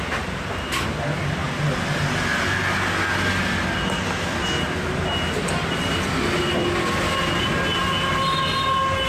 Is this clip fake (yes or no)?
no